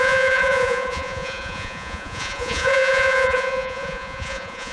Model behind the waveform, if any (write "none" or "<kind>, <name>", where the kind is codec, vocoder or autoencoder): vocoder, Vocos